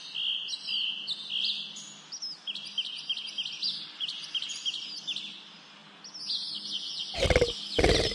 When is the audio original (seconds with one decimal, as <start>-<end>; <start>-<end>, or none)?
0.0-8.1